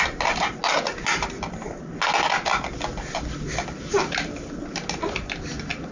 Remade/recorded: recorded